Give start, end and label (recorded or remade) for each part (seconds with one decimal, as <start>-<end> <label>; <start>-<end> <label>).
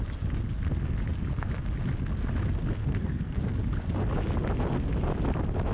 0.0-2.8 recorded; 2.8-3.4 remade; 3.4-5.7 recorded